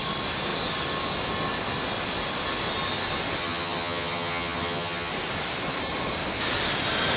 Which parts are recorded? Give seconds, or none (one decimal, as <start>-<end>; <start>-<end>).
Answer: 0.0-3.4; 5.1-7.2